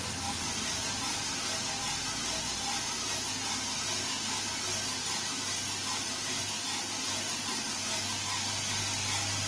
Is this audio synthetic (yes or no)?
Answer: no